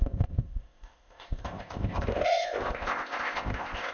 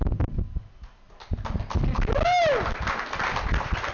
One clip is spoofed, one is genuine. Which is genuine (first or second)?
second